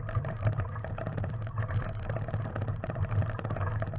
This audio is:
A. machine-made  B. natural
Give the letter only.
B